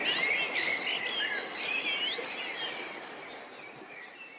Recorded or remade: recorded